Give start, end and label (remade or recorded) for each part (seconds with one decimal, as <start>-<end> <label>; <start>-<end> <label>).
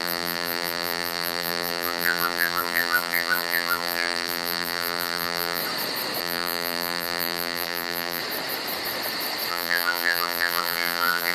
0.0-5.6 remade; 5.6-6.2 recorded; 6.2-8.2 remade; 8.2-9.5 recorded; 9.5-11.3 remade